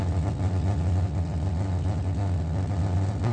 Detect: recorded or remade recorded